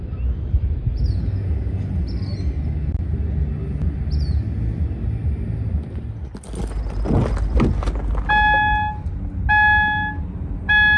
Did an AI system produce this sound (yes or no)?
no